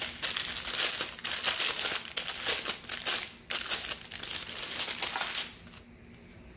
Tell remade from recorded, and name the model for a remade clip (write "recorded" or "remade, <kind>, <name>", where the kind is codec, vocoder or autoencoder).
recorded